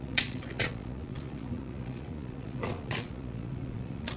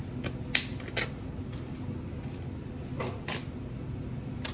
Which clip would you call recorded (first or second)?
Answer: second